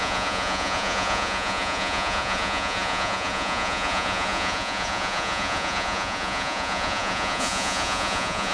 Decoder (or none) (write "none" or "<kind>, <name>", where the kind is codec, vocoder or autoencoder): vocoder, Vocos